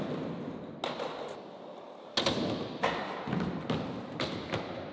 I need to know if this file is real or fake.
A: real